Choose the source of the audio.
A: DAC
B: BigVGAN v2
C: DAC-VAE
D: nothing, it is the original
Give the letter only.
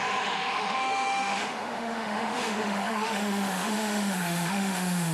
C